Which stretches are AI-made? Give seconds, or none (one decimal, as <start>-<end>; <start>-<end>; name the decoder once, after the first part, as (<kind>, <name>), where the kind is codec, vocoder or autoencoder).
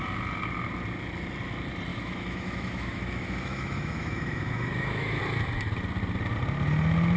1.9-5.2 (autoencoder, DAC-VAE)